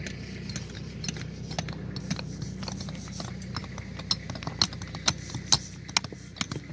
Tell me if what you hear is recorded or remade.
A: recorded